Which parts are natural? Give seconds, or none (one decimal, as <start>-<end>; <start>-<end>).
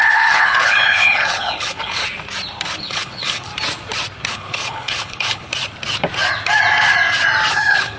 2.0-2.8; 3.5-4.3; 5.5-7.5